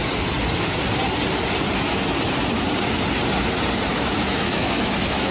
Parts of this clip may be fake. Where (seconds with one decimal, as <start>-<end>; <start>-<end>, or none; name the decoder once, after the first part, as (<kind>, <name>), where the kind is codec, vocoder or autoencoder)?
3.9-5.3 (autoencoder, DAC-VAE)